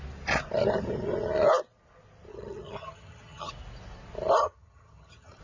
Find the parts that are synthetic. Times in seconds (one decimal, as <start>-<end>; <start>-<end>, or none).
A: 2.3-3.5; 4.4-5.4

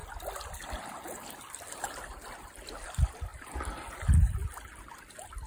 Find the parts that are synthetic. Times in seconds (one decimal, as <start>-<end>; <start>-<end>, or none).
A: 1.5-3.3

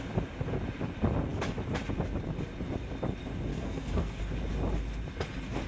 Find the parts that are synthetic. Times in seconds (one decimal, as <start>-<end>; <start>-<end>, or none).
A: 3.5-4.2

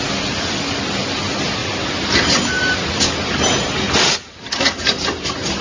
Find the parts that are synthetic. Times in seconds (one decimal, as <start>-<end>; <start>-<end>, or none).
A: none

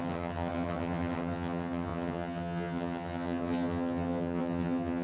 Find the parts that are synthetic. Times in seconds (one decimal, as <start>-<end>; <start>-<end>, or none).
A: 0.0-5.0

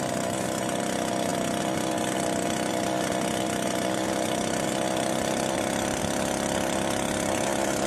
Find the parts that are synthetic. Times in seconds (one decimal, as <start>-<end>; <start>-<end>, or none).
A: none